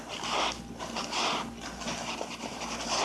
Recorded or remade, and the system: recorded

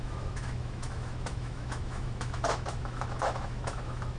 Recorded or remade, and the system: remade, autoencoder, DAC-VAE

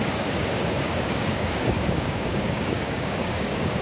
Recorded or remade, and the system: remade, codec, DAC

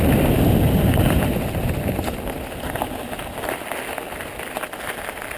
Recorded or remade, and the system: recorded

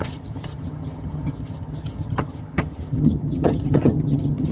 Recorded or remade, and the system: remade, vocoder, HiFi-GAN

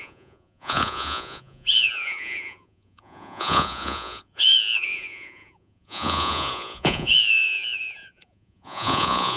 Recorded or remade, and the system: remade, vocoder, Vocos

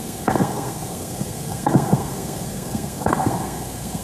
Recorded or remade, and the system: remade, codec, SNAC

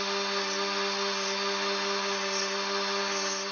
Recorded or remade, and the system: recorded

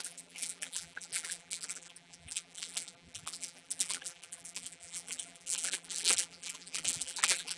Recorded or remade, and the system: remade, vocoder, BigVGAN v2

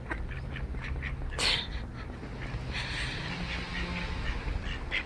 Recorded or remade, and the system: recorded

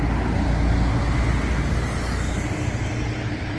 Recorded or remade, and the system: recorded